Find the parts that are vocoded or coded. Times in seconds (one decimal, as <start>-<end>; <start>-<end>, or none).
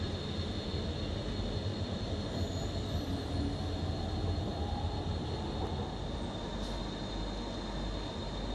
1.7-3.7